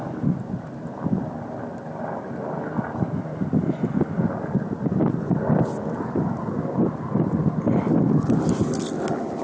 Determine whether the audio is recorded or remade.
recorded